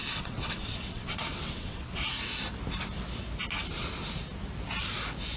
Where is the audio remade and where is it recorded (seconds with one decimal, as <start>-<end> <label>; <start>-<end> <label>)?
0.0-2.0 remade; 2.0-5.4 recorded